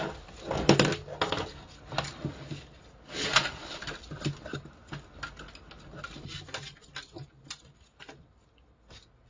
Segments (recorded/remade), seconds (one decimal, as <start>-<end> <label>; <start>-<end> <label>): 0.0-9.3 recorded